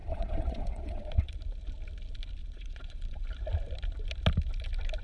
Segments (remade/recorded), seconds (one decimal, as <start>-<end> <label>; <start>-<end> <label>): 0.0-1.3 remade; 1.3-2.4 recorded; 2.4-3.2 remade; 3.2-5.0 recorded